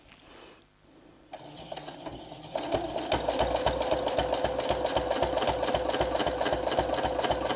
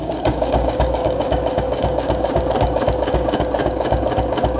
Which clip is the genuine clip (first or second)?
first